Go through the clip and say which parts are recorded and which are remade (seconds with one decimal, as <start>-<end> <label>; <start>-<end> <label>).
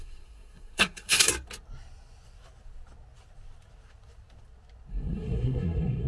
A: 0.0-1.3 remade; 1.3-4.9 recorded; 4.9-6.1 remade